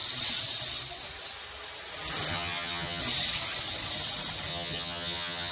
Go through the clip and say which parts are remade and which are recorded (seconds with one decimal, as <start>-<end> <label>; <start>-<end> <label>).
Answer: 0.0-2.3 recorded; 2.3-3.0 remade; 3.0-4.5 recorded; 4.5-5.5 remade